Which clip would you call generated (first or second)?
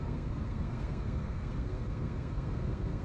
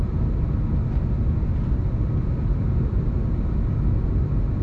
first